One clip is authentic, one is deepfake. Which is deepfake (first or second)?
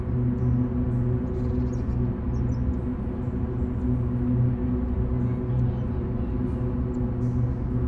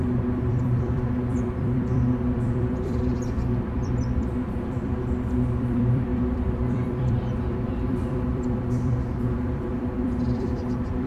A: second